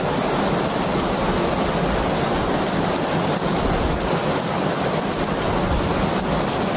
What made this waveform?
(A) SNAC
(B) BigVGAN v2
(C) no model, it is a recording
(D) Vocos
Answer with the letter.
C